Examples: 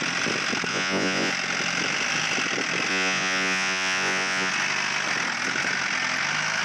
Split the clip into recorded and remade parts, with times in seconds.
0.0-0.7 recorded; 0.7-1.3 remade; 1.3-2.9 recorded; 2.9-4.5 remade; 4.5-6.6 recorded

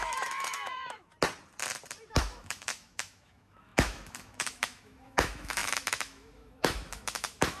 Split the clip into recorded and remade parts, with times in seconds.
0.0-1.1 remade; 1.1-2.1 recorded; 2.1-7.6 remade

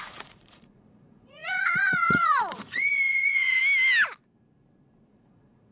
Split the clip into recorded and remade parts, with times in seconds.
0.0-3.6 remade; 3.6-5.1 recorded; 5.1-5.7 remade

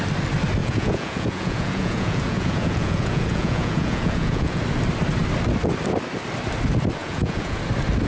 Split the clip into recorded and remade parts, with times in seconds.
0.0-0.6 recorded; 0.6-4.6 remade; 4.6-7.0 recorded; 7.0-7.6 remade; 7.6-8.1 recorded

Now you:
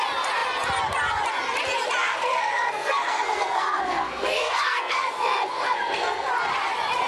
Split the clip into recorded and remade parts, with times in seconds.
0.0-2.0 recorded; 2.0-6.3 remade; 6.3-7.1 recorded

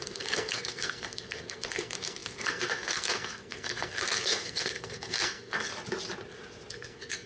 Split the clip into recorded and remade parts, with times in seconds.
0.0-5.7 remade; 5.7-6.7 recorded; 6.7-7.3 remade

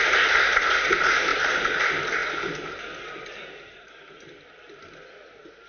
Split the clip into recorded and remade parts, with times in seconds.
0.0-5.7 recorded

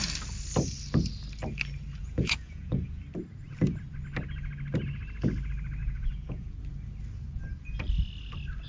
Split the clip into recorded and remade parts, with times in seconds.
0.0-2.0 recorded; 2.0-3.0 remade; 3.0-5.8 recorded; 5.8-6.6 remade; 6.6-8.7 recorded